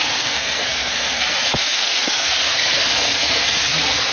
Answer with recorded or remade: remade